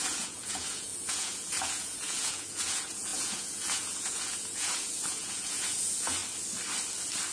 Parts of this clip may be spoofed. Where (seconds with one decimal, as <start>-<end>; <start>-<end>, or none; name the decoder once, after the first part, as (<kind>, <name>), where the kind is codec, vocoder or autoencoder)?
0.0-6.2 (vocoder, Vocos)